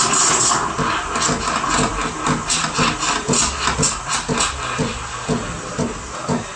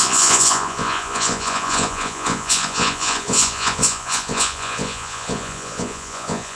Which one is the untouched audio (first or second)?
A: first